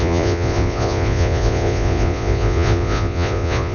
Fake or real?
fake